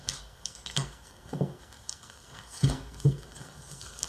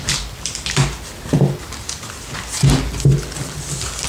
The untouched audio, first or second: second